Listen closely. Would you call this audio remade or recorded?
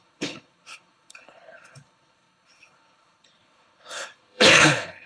remade